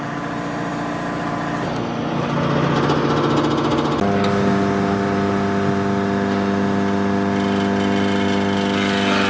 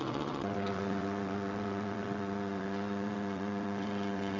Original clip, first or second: first